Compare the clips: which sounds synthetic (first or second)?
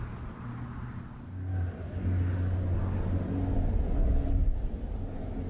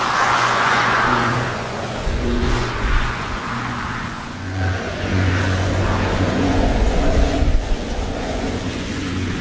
second